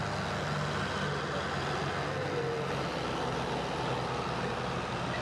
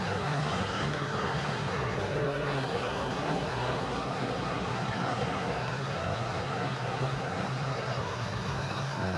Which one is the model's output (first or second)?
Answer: second